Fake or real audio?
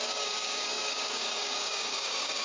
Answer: fake